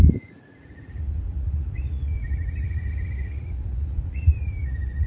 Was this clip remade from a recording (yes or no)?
yes